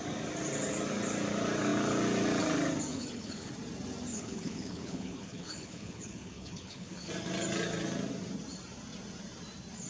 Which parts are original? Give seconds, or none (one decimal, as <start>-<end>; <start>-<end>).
0.0-2.9; 3.5-4.1; 7.1-9.9